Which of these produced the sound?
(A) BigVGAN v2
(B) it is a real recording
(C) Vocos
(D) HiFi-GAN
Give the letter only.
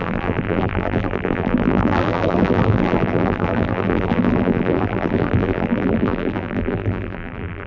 A